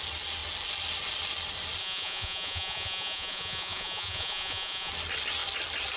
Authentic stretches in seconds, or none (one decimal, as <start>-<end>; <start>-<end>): 0.0-1.8; 4.9-6.0